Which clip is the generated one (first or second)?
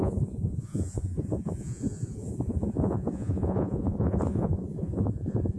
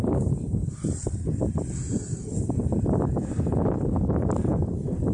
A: first